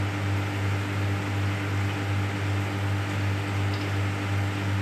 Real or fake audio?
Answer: real